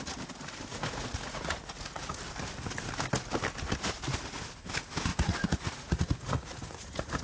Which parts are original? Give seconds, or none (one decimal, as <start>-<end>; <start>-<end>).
0.0-0.7; 2.1-5.1